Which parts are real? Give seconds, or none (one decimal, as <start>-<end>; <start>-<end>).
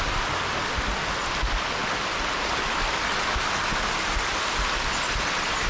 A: 0.0-5.7